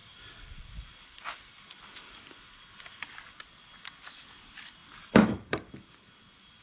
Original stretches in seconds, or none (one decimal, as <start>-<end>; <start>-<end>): 3.3-4.8; 6.0-6.6